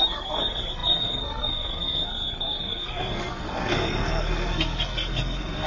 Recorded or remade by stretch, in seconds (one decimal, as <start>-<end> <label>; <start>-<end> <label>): 0.0-5.7 remade